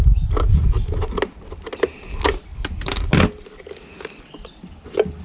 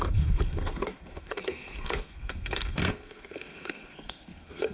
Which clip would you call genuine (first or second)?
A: first